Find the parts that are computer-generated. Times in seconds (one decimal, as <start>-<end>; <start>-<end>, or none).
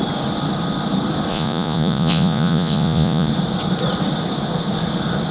1.3-3.3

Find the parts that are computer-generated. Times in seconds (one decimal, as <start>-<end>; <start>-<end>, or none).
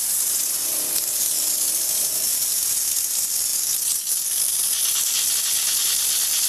0.0-2.3; 3.0-6.5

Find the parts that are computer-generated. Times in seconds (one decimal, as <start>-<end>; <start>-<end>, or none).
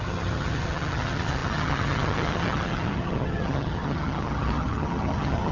0.0-5.5